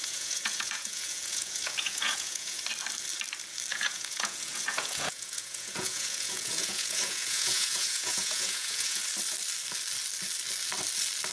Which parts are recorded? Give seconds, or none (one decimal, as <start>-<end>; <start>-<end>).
2.6-3.7; 9.0-11.3